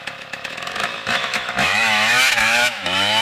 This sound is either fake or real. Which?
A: fake